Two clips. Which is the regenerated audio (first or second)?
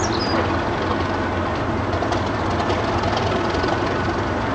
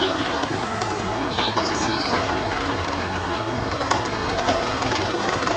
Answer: second